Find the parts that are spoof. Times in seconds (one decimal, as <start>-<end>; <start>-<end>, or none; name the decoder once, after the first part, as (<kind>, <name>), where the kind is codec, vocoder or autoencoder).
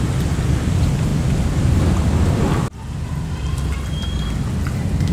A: 1.1-4.2 (vocoder, BigVGAN v2)